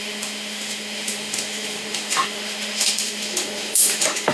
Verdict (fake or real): fake